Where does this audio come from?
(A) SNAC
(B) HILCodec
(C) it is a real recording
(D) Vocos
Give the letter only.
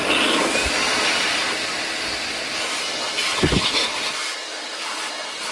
C